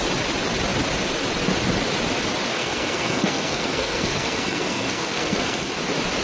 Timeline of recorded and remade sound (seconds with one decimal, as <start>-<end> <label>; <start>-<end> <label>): 0.0-2.5 recorded; 2.5-5.7 remade; 5.7-6.2 recorded